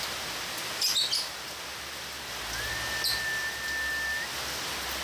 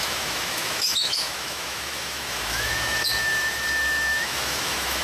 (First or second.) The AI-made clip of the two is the second